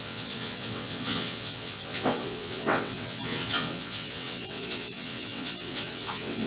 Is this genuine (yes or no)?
no